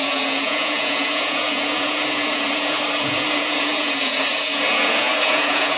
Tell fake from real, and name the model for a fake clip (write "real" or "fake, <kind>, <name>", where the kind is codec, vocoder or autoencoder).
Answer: fake, vocoder, Vocos